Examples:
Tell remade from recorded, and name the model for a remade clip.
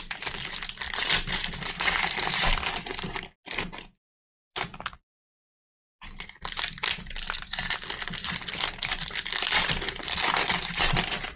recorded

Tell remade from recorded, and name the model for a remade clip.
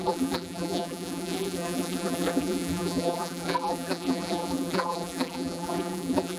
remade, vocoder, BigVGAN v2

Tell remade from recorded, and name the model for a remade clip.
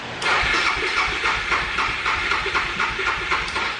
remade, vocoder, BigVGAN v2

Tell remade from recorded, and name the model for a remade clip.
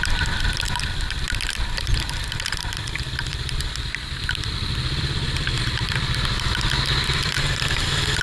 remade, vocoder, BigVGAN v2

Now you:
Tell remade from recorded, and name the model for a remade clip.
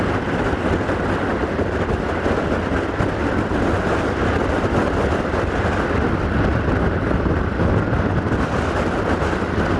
recorded